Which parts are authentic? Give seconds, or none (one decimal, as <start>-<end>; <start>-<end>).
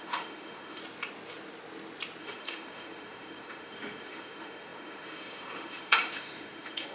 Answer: 0.8-2.2